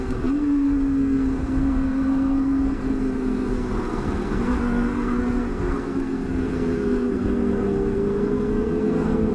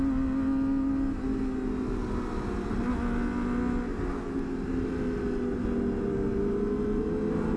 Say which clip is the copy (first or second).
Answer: first